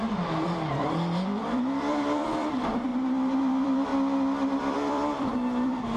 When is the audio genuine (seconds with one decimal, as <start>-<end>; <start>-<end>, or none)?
3.9-4.6